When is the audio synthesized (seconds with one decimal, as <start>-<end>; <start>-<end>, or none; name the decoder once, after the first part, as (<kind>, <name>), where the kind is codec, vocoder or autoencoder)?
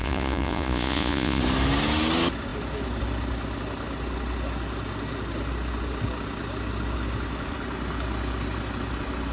0.0-1.4 (vocoder, Vocos)